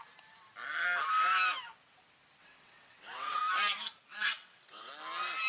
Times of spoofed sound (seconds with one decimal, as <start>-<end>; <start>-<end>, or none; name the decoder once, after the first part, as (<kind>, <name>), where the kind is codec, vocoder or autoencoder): 2.4-3.4 (vocoder, WaveNeXt); 4.1-4.9